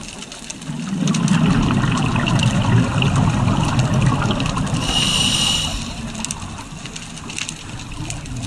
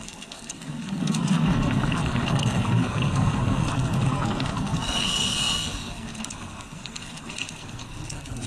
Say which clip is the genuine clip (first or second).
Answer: first